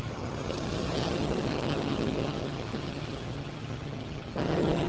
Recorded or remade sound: remade